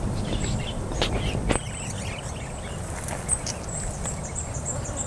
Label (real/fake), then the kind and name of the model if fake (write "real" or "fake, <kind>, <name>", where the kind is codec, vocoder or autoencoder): real